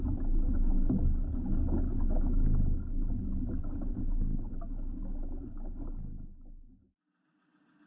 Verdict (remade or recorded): recorded